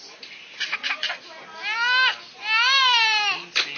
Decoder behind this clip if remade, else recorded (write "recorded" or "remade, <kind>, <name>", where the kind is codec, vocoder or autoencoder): recorded